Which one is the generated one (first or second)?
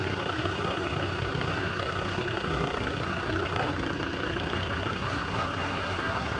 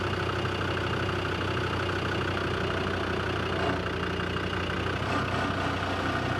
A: first